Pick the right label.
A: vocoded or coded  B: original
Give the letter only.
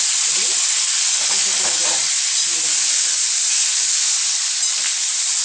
B